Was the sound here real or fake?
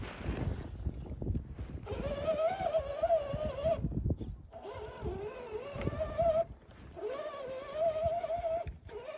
real